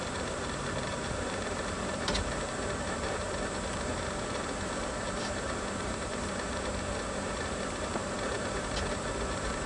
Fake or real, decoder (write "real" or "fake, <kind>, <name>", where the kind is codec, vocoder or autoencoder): fake, vocoder, BigVGAN v2